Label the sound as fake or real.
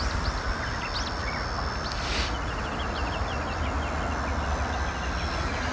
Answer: real